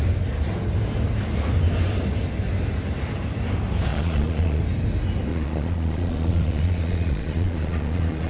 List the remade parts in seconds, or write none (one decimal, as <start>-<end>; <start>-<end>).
3.9-4.6; 5.3-8.3